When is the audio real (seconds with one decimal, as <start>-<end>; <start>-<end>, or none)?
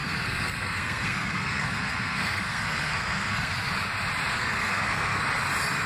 3.5-4.3; 5.2-5.9